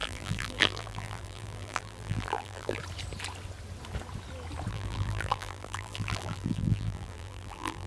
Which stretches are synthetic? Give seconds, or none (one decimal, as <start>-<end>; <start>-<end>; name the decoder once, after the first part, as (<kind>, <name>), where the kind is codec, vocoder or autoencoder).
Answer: 0.0-2.8 (vocoder, BigVGAN v2); 4.7-7.9